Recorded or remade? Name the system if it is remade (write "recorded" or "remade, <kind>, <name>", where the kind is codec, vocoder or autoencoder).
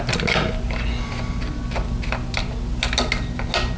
recorded